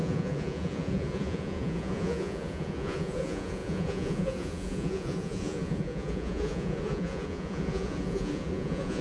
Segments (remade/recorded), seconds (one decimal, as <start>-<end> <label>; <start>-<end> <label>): 0.0-9.0 remade

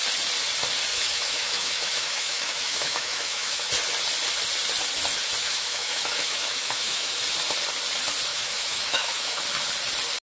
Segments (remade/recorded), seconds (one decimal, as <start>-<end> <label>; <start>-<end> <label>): 0.0-0.9 recorded; 0.9-3.7 remade; 3.7-5.4 recorded; 5.4-7.1 remade; 7.1-8.3 recorded; 8.3-9.4 remade; 9.4-10.3 recorded

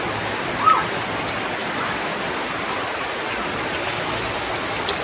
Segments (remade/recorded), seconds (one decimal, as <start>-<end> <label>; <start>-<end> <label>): 0.0-5.0 recorded

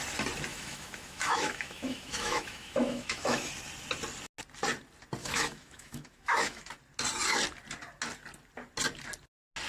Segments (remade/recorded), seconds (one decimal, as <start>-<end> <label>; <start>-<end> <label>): 0.0-0.5 recorded; 0.5-3.5 remade; 3.5-5.2 recorded; 5.2-6.7 remade; 6.7-9.7 recorded

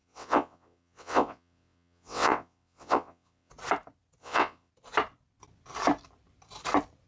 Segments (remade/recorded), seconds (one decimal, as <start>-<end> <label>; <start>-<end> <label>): 0.0-3.5 remade; 3.5-4.2 recorded; 4.2-4.7 remade; 4.7-7.1 recorded

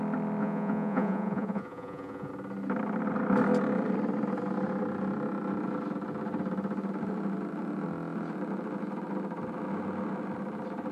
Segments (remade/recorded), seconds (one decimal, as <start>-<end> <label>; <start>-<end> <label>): 0.0-0.4 recorded; 0.4-2.3 remade; 2.3-10.9 recorded

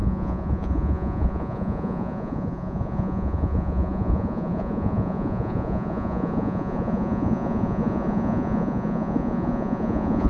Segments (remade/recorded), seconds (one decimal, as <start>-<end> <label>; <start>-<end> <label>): 0.0-10.3 remade